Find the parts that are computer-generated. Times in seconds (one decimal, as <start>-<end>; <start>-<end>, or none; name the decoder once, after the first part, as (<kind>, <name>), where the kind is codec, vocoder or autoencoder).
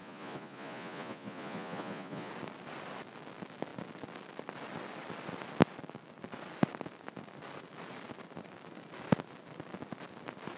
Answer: 0.0-2.3 (vocoder, Vocos)